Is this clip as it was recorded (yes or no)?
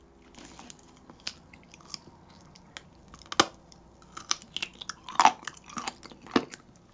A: yes